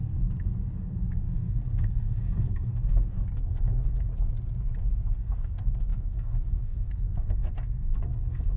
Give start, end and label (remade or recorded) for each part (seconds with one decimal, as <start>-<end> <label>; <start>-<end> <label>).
0.0-4.1 remade; 4.1-5.2 recorded; 5.2-8.6 remade